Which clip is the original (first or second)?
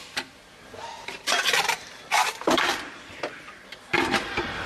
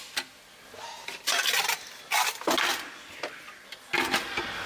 second